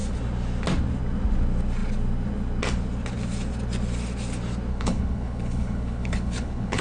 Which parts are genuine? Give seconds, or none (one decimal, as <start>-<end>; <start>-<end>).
0.0-4.7